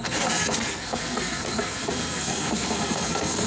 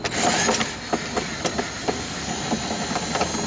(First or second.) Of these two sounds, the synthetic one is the first